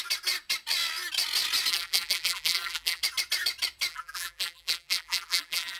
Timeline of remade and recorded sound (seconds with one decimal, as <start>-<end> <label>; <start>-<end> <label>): 0.0-1.7 recorded; 1.7-3.0 remade; 3.0-3.9 recorded; 3.9-5.8 remade